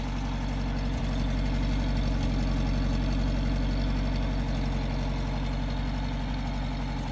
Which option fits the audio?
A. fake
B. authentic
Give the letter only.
B